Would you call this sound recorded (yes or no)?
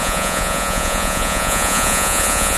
no